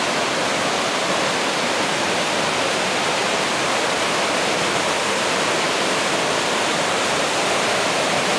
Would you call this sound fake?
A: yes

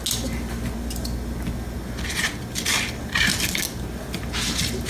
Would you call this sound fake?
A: no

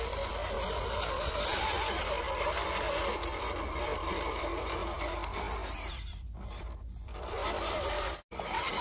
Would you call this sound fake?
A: yes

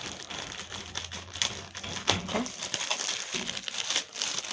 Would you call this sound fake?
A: no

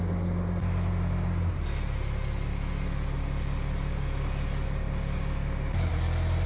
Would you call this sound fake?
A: no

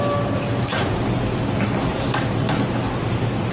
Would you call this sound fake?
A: no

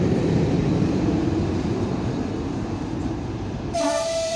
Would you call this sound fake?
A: yes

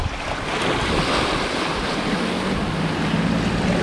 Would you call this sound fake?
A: no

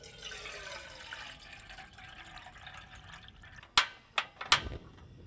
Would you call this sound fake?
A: no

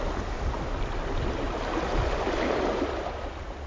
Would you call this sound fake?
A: no